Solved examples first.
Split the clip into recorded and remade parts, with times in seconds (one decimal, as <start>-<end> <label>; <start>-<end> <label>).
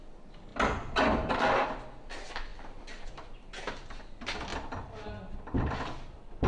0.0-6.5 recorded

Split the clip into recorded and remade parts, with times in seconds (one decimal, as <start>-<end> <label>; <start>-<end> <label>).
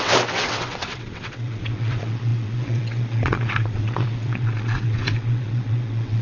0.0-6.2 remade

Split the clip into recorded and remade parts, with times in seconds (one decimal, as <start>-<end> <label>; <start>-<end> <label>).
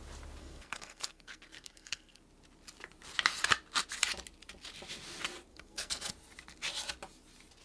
0.0-0.4 recorded; 0.4-2.2 remade; 2.2-5.5 recorded; 5.5-6.1 remade; 6.1-7.6 recorded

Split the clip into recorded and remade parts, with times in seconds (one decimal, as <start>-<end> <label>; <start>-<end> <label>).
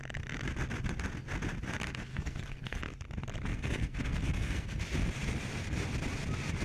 0.0-2.1 recorded; 2.1-2.8 remade; 2.8-3.5 recorded; 3.5-4.8 remade; 4.8-6.6 recorded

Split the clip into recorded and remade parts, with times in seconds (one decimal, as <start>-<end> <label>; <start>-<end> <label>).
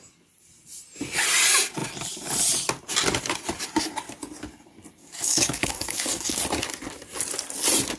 0.0-5.0 recorded; 5.0-6.4 remade; 6.4-8.0 recorded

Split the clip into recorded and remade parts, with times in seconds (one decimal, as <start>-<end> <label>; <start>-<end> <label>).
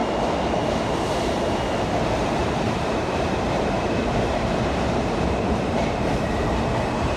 0.0-1.0 recorded; 1.0-7.2 remade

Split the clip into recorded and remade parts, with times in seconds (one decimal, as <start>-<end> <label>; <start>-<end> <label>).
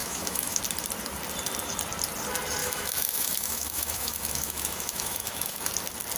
0.0-0.6 remade; 0.6-2.6 recorded; 2.6-5.7 remade; 5.7-6.2 recorded